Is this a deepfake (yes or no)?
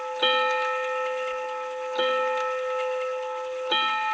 no